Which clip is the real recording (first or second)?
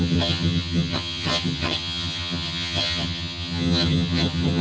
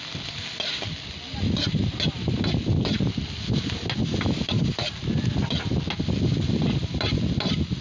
second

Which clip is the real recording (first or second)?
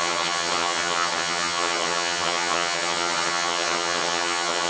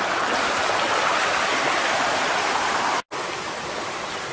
second